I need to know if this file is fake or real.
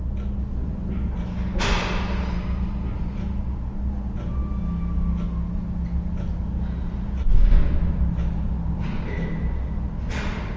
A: real